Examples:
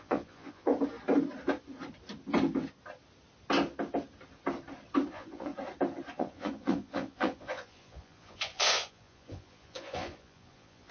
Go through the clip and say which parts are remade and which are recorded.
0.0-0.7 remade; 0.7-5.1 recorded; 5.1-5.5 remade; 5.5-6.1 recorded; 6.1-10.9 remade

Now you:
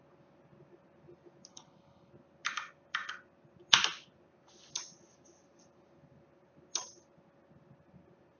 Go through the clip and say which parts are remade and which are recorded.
0.0-1.5 recorded; 1.5-2.1 remade; 2.1-8.4 recorded

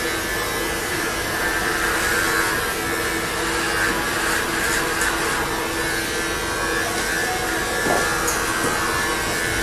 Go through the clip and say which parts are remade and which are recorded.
0.0-0.8 recorded; 0.8-1.5 remade; 1.5-9.6 recorded

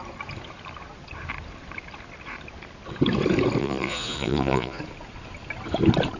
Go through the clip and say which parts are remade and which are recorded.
0.0-3.6 recorded; 3.6-4.8 remade; 4.8-6.2 recorded

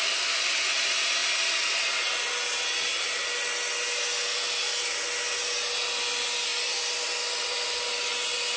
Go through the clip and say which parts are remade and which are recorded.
0.0-8.6 recorded

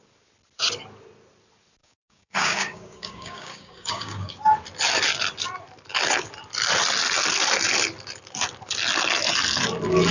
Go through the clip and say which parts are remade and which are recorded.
0.0-1.8 recorded; 1.8-4.4 remade; 4.4-10.1 recorded